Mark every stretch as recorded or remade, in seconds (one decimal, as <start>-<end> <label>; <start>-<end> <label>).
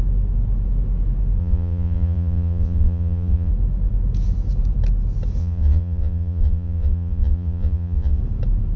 0.0-1.4 recorded; 1.4-3.5 remade; 3.5-5.4 recorded; 5.4-8.2 remade; 8.2-8.8 recorded